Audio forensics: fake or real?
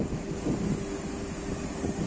real